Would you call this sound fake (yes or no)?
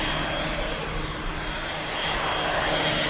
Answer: no